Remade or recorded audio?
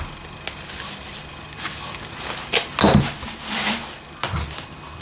recorded